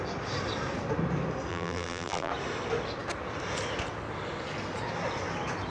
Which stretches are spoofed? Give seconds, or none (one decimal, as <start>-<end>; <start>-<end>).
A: 1.5-2.3